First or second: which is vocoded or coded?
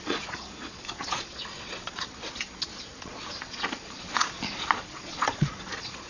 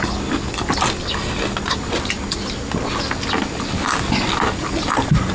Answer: first